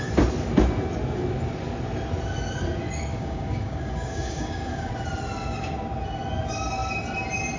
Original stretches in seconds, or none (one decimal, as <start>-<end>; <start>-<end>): 0.0-3.1; 4.9-7.6